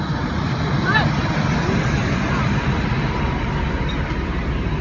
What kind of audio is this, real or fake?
real